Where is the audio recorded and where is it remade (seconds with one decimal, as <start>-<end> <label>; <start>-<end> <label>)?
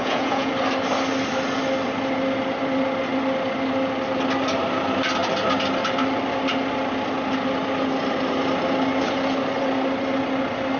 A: 0.0-0.5 remade; 0.5-10.8 recorded